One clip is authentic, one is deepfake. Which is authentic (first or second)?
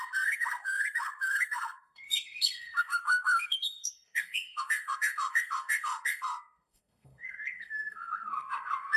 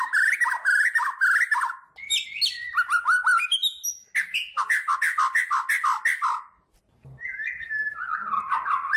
second